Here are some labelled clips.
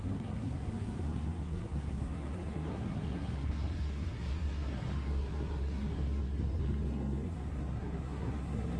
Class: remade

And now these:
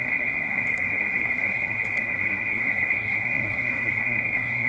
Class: remade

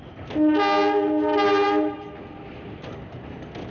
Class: recorded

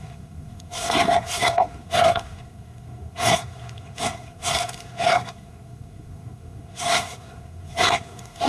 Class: remade